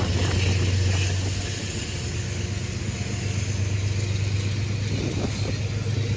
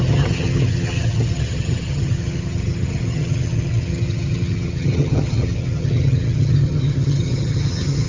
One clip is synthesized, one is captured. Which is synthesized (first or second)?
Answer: second